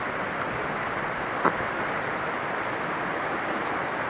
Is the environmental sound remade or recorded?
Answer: recorded